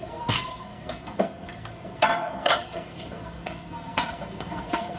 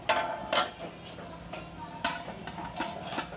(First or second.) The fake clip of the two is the first